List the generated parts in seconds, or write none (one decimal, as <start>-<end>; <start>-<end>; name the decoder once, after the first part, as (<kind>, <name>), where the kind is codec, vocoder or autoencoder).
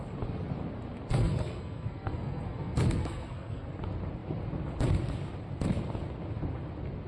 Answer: 1.1-3.7 (codec, SNAC)